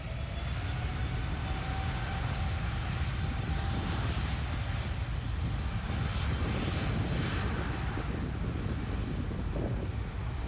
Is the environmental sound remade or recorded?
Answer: recorded